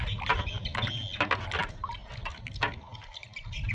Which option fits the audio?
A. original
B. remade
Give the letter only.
A